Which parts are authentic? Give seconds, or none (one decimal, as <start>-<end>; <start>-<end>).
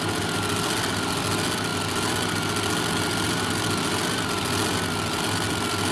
0.0-5.9